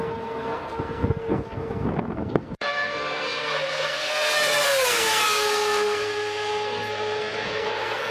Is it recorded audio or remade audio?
remade